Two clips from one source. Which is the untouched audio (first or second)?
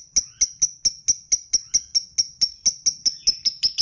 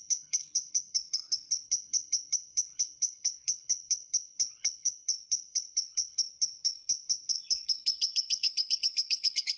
first